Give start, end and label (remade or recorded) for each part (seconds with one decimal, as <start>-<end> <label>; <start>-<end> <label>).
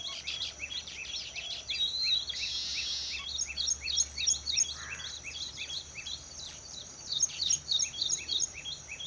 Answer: 0.0-1.0 remade; 1.0-5.5 recorded; 5.5-9.1 remade